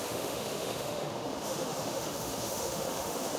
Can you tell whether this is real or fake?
fake